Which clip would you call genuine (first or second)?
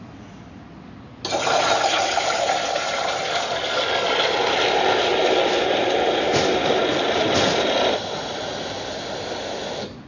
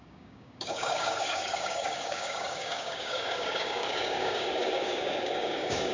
first